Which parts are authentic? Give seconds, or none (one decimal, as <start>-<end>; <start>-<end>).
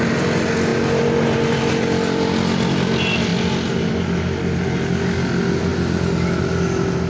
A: 0.0-7.1